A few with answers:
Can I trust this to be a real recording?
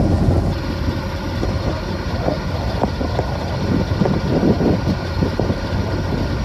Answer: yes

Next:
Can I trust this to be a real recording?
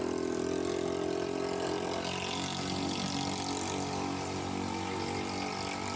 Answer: yes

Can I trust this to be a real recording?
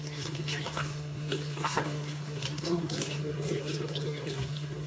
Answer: no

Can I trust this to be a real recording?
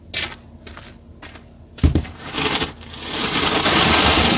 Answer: yes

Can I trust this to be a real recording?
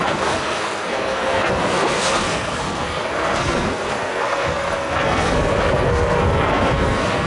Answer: no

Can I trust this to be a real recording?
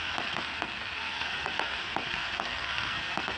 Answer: no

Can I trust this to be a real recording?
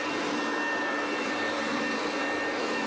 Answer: yes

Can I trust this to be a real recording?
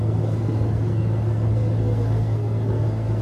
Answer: no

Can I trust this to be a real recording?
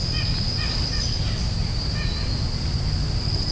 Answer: yes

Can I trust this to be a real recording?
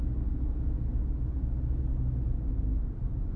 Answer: yes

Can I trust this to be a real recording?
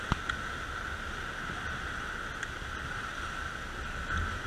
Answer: yes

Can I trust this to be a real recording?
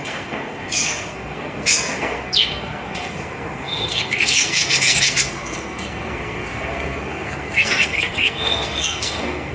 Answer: no